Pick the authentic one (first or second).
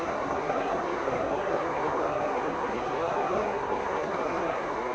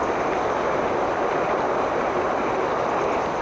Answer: second